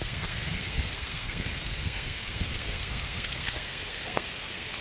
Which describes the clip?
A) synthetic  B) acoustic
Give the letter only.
A